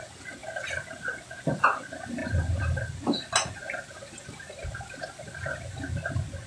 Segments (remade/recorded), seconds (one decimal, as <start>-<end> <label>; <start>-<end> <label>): 0.0-6.5 recorded